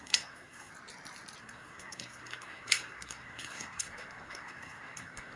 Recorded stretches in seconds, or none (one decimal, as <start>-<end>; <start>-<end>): 0.7-1.4